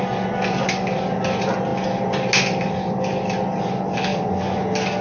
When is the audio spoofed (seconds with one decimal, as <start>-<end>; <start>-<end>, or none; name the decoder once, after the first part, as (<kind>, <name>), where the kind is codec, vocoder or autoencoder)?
none